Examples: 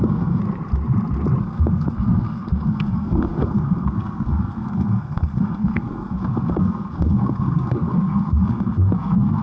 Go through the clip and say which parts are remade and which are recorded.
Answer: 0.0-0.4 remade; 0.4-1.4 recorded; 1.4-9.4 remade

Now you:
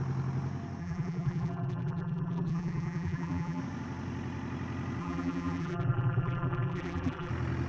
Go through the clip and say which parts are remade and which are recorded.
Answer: 0.0-0.8 recorded; 0.8-3.6 remade; 3.6-5.0 recorded; 5.0-7.3 remade; 7.3-7.7 recorded

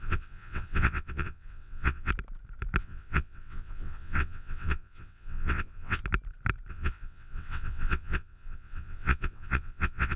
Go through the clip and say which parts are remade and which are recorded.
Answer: 0.0-2.1 remade; 2.1-2.8 recorded; 2.8-6.0 remade; 6.0-6.7 recorded; 6.7-10.2 remade